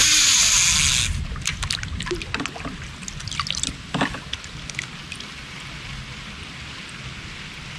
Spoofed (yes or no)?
no